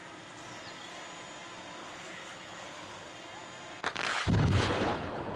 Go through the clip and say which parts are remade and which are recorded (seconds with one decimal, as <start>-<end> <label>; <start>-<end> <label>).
0.0-1.8 recorded; 1.8-3.1 remade; 3.1-4.1 recorded; 4.1-5.4 remade